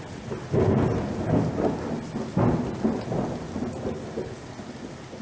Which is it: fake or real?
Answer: real